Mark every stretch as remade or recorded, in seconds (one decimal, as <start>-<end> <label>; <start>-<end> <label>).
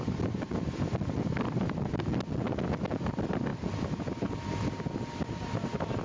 0.0-6.0 recorded